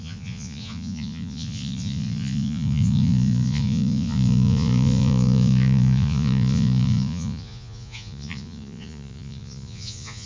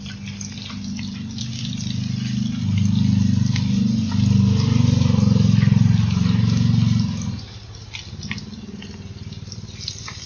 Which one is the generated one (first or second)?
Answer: first